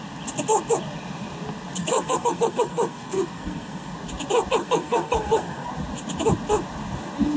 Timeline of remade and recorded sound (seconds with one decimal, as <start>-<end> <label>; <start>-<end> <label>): 0.0-1.8 recorded; 1.8-3.9 remade; 3.9-4.6 recorded; 4.6-5.7 remade; 5.7-7.4 recorded